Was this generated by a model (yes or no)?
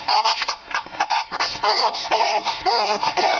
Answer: yes